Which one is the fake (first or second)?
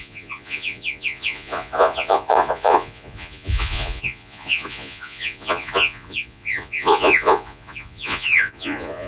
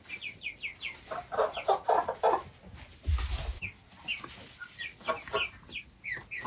first